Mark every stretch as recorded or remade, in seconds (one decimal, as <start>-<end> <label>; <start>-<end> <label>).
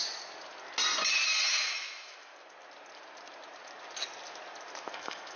0.0-1.5 recorded; 1.5-2.3 remade; 2.3-4.9 recorded; 4.9-5.4 remade